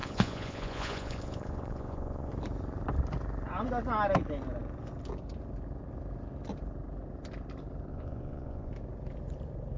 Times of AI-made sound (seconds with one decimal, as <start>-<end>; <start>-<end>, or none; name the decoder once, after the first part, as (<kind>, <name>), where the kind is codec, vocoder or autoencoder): 0.0-2.3 (vocoder, Vocos); 7.9-8.7